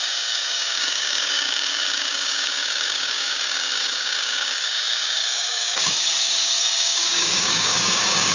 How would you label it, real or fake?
fake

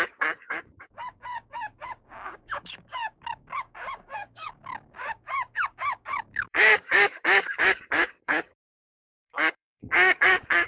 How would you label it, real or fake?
fake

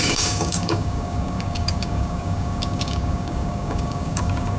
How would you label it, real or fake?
fake